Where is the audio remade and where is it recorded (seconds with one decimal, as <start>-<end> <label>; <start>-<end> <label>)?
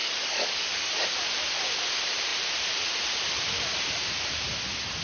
0.0-0.9 remade; 0.9-5.0 recorded